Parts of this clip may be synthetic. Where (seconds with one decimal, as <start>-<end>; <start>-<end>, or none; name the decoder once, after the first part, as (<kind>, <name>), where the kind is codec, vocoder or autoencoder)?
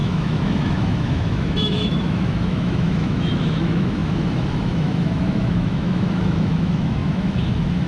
0.0-7.9 (autoencoder, DAC-VAE)